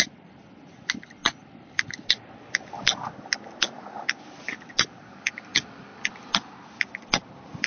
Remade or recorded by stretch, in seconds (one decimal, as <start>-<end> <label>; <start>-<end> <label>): 0.0-7.7 recorded